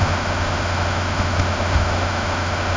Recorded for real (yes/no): no